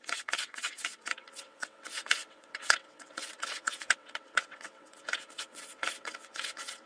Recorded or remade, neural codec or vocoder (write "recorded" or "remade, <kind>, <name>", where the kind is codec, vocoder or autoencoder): remade, vocoder, WaveNeXt